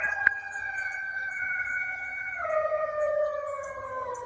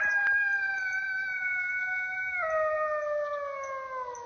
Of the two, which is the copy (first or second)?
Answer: first